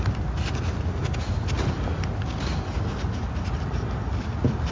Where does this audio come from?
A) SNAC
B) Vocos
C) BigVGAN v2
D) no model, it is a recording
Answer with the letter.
D